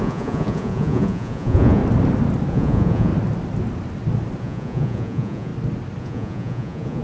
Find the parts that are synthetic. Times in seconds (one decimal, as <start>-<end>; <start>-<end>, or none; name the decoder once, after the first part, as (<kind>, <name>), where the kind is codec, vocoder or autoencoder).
0.0-1.8 (vocoder, Vocos); 2.5-3.1; 4.4-5.5; 6.0-7.0